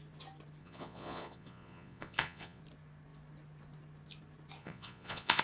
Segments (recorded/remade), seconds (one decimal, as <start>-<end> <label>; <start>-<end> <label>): 0.0-0.6 recorded; 0.6-2.6 remade; 2.6-4.6 recorded; 4.6-5.4 remade